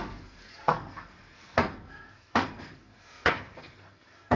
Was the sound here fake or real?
fake